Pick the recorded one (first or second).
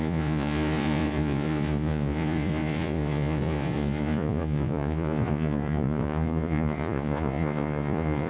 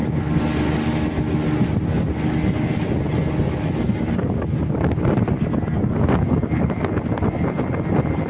second